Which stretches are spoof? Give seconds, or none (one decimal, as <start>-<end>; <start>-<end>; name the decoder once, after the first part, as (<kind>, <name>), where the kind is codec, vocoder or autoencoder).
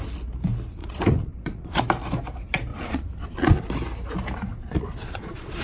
0.8-1.8 (vocoder, Vocos); 2.7-3.7; 4.5-5.6